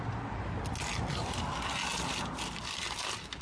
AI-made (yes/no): no